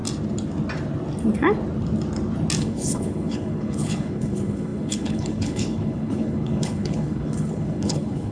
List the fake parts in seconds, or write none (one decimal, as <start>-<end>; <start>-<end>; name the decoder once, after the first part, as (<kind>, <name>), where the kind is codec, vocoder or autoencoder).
2.6-8.3 (codec, HILCodec)